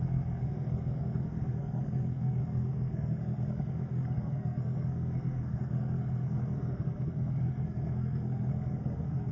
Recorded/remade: remade